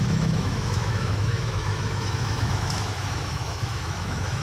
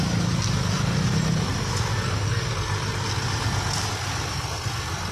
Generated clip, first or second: first